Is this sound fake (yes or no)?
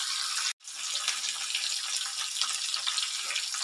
no